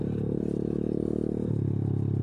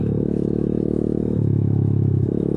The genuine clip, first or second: first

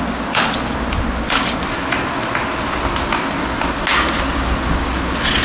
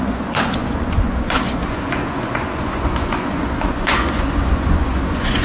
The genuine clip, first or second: first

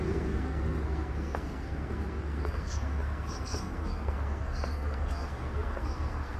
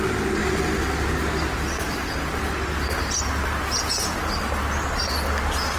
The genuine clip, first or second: second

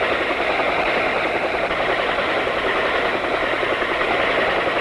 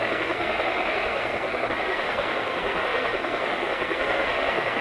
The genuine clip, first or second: first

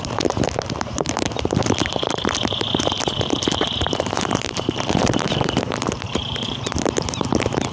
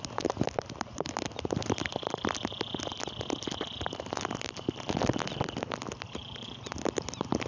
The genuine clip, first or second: second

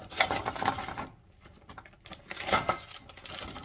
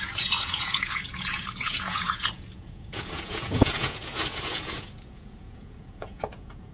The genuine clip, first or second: first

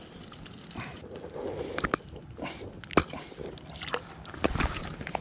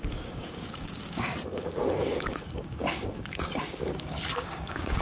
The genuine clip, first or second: first